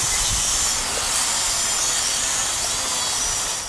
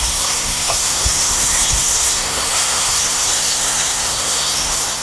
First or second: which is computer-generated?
second